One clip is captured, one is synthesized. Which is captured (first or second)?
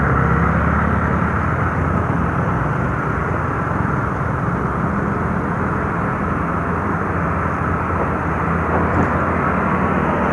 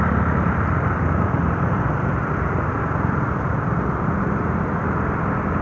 first